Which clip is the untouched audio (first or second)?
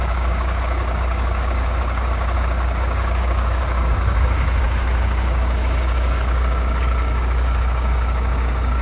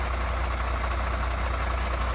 second